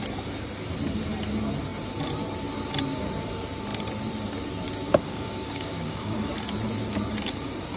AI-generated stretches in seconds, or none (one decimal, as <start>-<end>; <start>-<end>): 4.9-6.3